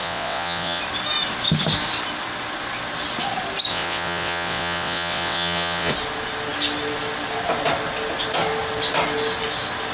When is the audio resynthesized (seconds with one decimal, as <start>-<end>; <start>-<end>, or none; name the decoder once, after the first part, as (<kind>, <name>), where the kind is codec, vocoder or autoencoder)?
0.0-0.8 (vocoder, WaveNeXt); 3.7-5.9